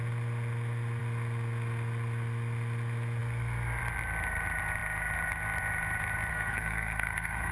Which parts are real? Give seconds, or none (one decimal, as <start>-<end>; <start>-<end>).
0.0-6.3